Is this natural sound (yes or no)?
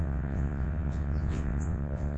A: no